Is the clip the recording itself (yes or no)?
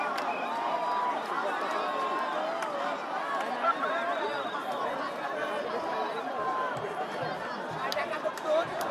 yes